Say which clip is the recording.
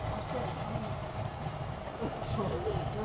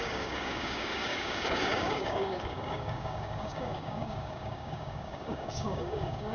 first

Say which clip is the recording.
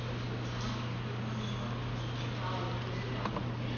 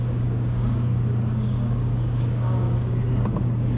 first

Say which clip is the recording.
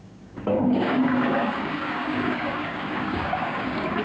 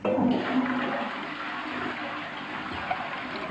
second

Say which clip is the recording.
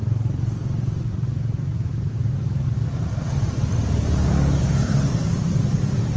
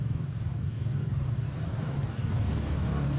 first